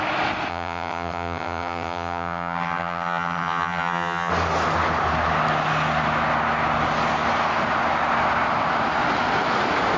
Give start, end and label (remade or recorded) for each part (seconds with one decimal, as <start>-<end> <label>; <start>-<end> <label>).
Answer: 0.0-0.5 recorded; 0.5-4.3 remade; 4.3-10.0 recorded